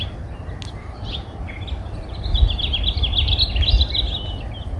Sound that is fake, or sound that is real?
real